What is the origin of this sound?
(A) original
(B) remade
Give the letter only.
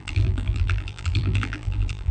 B